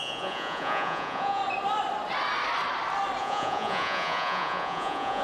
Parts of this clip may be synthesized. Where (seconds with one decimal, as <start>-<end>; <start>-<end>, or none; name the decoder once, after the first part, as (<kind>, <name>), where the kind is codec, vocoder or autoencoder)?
0.0-1.4 (vocoder, Vocos); 3.2-5.2